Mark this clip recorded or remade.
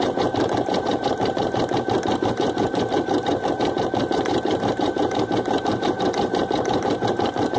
remade